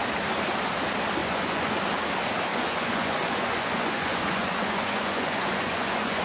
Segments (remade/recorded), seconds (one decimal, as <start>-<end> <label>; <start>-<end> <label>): 0.0-1.2 recorded; 1.2-1.8 remade; 1.8-2.5 recorded; 2.5-6.2 remade